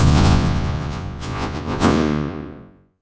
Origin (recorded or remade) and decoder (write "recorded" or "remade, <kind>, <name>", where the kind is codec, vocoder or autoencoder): remade, vocoder, Vocos